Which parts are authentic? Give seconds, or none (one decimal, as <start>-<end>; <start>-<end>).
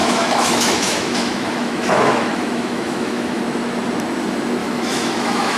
3.4-4.6